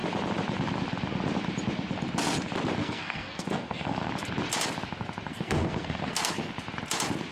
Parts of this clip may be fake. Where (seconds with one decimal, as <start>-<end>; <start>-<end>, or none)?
2.8-4.1; 5.3-6.5